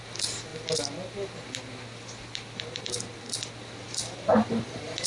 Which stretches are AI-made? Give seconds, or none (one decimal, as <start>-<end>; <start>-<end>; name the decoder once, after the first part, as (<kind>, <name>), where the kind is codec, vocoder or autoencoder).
4.3-5.1 (vocoder, BigVGAN v2)

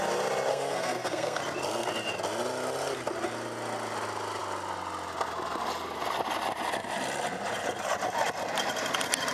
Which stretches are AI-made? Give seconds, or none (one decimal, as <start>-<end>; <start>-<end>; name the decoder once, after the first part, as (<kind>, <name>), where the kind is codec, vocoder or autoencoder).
0.5-1.4 (codec, SNAC)